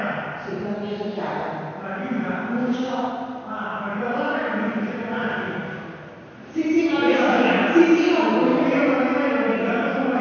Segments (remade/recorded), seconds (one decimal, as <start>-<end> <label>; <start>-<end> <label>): 0.0-2.6 recorded; 2.6-3.1 remade; 3.1-6.9 recorded; 6.9-7.5 remade; 7.5-10.2 recorded